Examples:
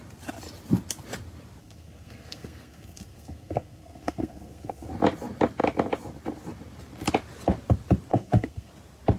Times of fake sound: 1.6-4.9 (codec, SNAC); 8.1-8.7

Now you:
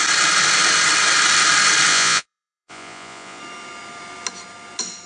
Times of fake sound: 1.9-3.4 (vocoder, Vocos)

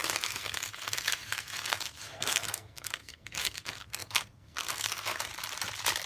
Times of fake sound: 0.0-5.3 (codec, SNAC)